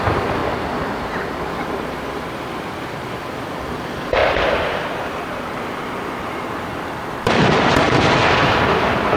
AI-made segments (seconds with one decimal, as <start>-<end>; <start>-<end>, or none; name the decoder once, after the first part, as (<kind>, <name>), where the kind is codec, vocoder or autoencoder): 0.0-0.4 (vocoder, BigVGAN v2); 1.5-9.2